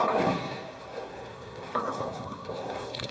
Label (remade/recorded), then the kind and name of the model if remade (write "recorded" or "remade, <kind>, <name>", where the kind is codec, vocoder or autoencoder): remade, codec, SNAC